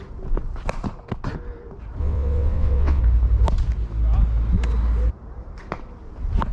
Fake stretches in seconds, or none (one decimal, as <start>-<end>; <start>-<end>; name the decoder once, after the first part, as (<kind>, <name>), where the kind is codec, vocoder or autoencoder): 2.0-3.0 (vocoder, WaveNeXt)